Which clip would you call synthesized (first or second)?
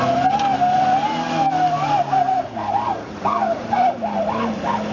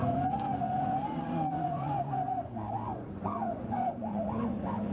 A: second